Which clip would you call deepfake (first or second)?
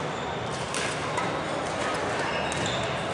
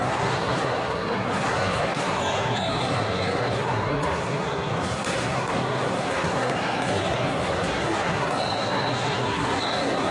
second